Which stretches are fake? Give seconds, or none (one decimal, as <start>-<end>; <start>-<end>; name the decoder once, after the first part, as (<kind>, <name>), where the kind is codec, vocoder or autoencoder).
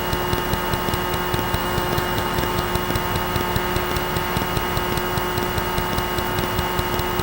1.6-2.7 (autoencoder, DAC-VAE)